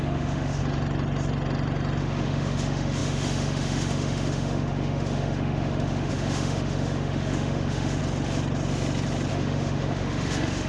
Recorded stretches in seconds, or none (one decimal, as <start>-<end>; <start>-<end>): 0.6-2.0; 8.0-9.3